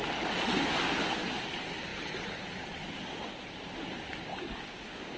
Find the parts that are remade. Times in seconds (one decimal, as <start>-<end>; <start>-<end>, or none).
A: 4.3-5.2